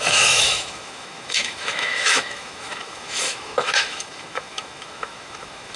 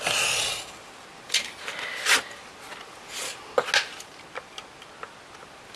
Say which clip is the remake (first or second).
first